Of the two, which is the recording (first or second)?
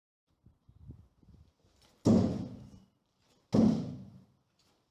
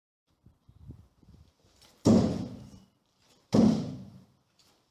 first